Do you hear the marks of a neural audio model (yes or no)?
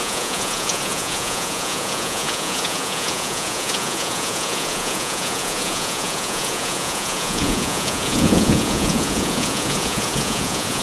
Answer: yes